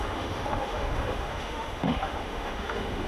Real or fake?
fake